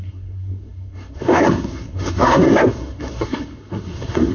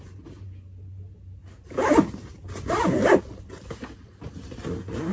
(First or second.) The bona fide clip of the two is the second